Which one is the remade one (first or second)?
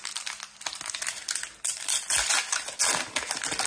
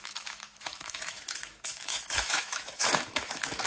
second